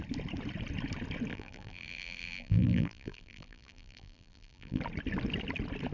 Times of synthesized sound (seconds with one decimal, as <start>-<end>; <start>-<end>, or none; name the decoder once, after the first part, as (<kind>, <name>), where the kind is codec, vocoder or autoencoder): 1.3-4.8 (vocoder, BigVGAN v2)